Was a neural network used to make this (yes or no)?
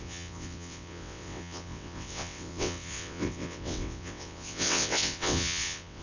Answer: yes